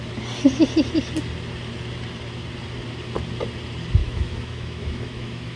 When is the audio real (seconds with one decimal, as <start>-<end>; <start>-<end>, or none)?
0.0-4.0

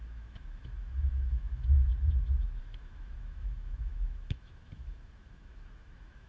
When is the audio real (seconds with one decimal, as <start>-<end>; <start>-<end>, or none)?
1.9-2.6

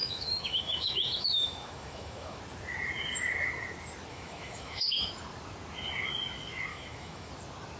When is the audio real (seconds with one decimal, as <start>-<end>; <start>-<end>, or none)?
2.4-4.1; 5.1-6.7; 7.3-7.8

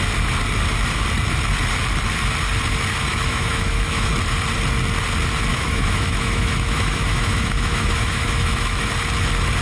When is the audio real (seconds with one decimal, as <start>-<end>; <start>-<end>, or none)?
0.0-3.1; 4.1-5.5; 8.9-9.6

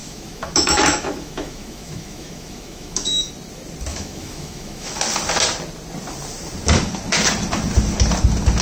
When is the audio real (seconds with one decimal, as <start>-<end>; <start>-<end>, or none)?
3.3-3.9; 5.0-8.6

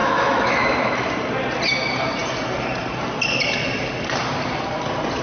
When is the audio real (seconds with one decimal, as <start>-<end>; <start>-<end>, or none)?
1.1-5.2

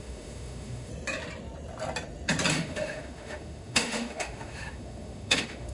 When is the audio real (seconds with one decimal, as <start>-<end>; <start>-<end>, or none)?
0.9-2.5

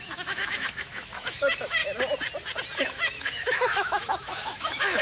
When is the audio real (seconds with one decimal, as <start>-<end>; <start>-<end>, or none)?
1.8-2.8